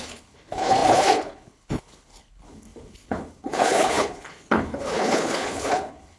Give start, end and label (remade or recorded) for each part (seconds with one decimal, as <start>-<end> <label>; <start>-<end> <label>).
0.0-6.2 remade